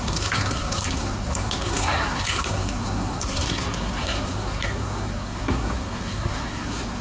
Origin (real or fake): fake